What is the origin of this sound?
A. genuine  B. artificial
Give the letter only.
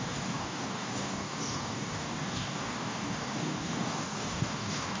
B